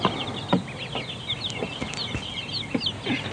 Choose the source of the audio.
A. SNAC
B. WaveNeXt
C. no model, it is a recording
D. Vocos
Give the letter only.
C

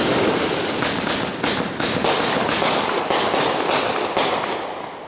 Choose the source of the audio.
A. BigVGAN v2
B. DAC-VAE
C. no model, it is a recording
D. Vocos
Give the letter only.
A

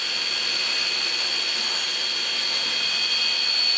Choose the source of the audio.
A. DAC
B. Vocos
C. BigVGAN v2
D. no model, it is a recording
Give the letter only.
D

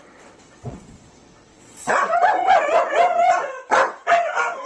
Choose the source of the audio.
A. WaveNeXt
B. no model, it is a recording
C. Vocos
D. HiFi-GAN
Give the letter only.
A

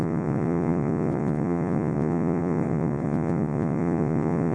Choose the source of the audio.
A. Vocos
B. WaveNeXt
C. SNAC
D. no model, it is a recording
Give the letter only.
A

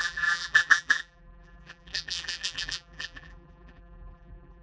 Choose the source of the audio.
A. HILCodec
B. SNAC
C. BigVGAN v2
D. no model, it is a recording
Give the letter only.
C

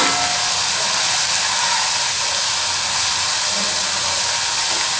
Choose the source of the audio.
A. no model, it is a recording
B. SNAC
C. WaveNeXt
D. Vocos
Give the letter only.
A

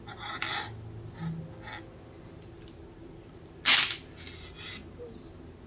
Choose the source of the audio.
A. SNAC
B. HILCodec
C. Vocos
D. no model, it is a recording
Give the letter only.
D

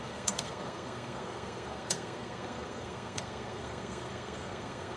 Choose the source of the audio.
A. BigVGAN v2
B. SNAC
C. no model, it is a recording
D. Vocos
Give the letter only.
B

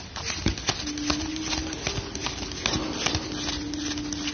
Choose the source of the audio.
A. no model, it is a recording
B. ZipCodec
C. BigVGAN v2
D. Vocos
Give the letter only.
A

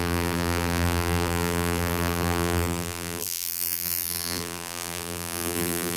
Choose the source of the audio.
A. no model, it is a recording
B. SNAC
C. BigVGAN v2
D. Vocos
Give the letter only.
C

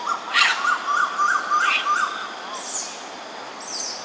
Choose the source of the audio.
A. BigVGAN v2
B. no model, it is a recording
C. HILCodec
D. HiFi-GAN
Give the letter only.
B